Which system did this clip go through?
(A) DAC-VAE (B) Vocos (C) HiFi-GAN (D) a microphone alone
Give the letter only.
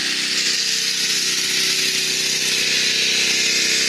D